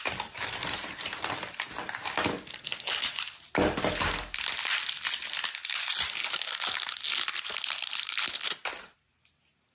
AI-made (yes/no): no